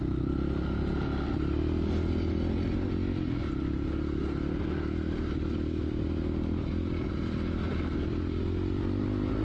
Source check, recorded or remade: recorded